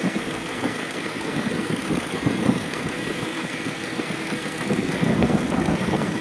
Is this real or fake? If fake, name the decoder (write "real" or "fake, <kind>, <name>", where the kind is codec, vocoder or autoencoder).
fake, codec, SNAC